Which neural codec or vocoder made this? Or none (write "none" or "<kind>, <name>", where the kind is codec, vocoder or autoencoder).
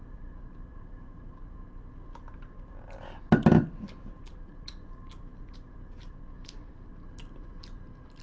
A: none